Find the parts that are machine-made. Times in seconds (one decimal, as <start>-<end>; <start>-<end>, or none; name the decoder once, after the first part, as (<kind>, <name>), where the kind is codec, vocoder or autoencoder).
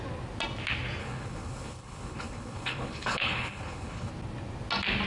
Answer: 1.0-4.1 (codec, HILCodec)